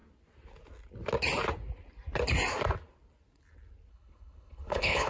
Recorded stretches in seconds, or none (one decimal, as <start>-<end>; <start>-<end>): 0.0-3.9